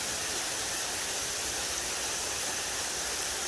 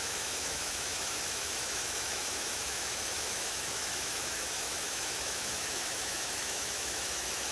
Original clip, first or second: first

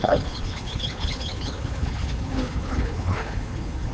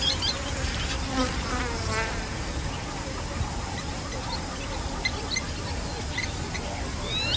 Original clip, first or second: second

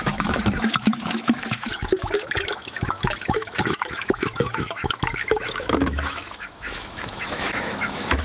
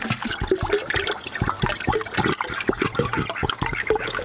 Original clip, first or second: second